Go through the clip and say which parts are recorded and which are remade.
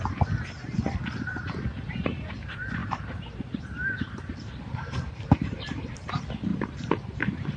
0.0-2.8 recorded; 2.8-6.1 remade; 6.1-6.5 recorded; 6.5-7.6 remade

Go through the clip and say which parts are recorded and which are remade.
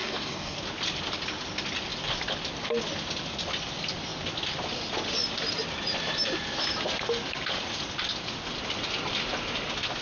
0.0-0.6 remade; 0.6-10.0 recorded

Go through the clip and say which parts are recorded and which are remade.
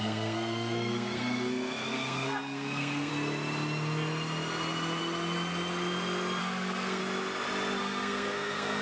0.0-3.1 remade; 3.1-6.4 recorded; 6.4-7.0 remade; 7.0-7.8 recorded; 7.8-8.8 remade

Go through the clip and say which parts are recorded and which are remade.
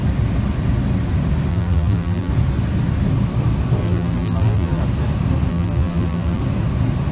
0.0-1.5 recorded; 1.5-2.3 remade; 2.3-3.8 recorded; 3.8-4.8 remade; 4.8-5.5 recorded; 5.5-6.4 remade; 6.4-7.1 recorded